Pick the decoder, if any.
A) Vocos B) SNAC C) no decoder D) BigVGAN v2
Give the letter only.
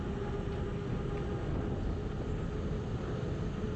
C